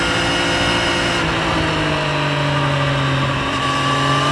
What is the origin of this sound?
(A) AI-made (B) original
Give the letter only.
B